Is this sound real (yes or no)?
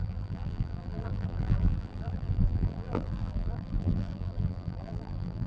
no